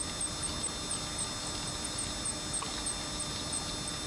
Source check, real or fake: real